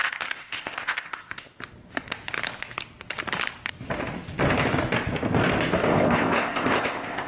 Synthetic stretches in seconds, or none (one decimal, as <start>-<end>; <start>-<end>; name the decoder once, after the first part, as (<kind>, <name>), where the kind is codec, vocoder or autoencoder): 0.0-1.6 (codec, ZipCodec); 5.8-7.3